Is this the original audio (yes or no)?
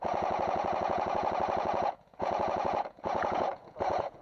no